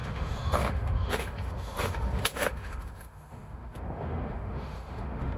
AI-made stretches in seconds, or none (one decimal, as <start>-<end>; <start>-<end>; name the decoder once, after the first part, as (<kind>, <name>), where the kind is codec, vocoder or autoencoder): 0.0-5.4 (autoencoder, DAC-VAE)

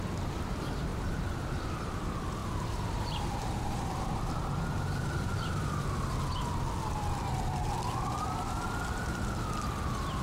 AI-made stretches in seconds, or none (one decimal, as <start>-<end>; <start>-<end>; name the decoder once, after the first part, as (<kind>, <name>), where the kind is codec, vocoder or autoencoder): 0.9-2.0 (vocoder, BigVGAN v2); 2.4-5.6

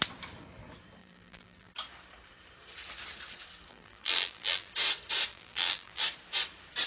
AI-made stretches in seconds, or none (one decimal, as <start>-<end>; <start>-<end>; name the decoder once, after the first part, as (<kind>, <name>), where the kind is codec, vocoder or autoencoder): 1.0-1.7 (vocoder, BigVGAN v2); 3.7-4.7; 5.3-6.0

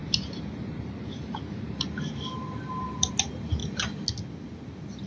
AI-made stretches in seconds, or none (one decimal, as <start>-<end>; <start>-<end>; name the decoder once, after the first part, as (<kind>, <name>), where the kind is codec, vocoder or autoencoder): 0.0-3.6 (vocoder, BigVGAN v2)